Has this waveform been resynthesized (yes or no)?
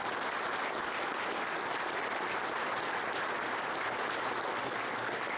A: no